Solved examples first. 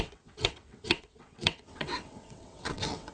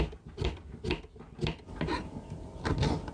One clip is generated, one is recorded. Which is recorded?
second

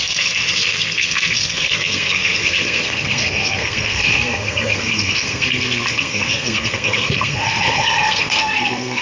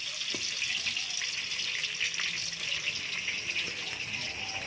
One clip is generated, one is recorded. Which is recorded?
second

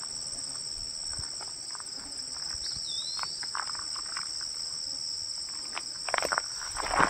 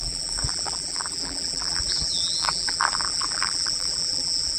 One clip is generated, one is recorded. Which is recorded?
first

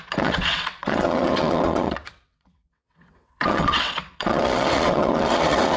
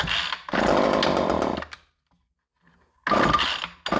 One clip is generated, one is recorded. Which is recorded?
second